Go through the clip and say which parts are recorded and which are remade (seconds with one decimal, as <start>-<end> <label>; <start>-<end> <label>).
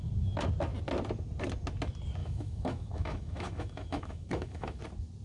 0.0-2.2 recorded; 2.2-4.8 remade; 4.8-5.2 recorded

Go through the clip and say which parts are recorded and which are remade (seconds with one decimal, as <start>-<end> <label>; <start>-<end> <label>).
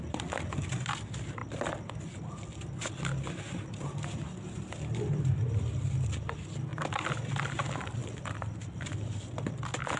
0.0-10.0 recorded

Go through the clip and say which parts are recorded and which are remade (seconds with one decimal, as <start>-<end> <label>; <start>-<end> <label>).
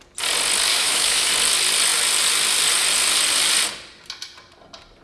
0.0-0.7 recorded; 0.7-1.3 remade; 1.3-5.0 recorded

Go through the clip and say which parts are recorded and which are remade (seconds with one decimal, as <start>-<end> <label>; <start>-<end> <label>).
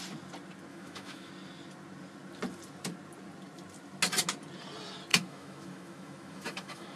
0.0-0.7 recorded; 0.7-1.3 remade; 1.3-5.1 recorded; 5.1-7.0 remade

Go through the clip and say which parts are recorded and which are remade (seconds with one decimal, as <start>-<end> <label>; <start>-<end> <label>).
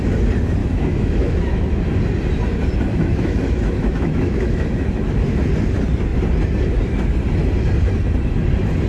0.0-0.6 recorded; 0.6-1.8 remade; 1.8-2.9 recorded; 2.9-4.9 remade; 4.9-8.9 recorded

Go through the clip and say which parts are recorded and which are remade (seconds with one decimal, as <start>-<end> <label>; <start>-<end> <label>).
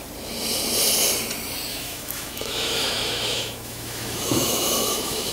0.0-1.7 recorded; 1.7-5.3 remade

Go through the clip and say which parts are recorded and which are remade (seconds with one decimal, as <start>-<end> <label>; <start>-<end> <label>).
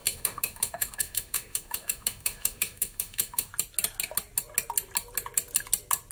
0.0-3.5 remade; 3.5-6.1 recorded